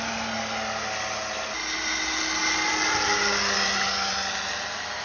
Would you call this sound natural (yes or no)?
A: yes